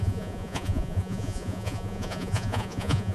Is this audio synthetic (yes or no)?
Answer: yes